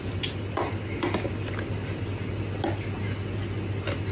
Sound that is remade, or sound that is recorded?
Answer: recorded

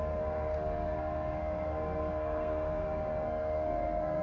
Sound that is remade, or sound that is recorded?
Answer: remade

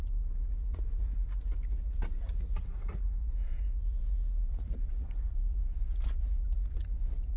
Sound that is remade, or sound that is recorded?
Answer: remade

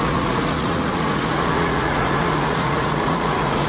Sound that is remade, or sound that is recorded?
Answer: remade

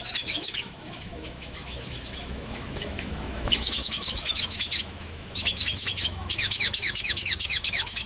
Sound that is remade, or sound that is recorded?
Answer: remade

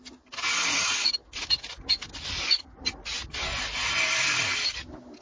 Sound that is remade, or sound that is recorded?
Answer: recorded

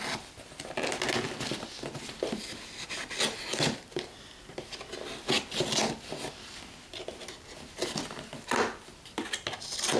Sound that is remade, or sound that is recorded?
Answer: recorded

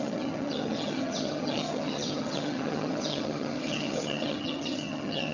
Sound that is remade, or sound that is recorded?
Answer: remade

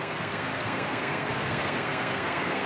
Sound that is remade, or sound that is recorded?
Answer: remade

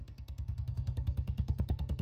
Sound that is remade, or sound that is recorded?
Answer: remade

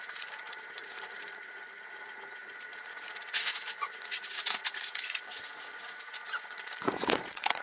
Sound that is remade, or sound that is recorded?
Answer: remade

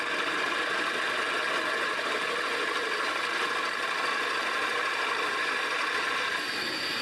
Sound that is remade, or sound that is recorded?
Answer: recorded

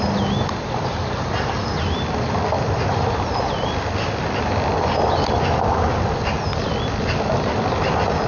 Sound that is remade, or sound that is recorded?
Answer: recorded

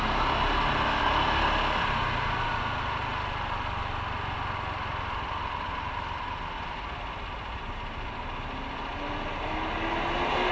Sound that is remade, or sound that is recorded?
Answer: recorded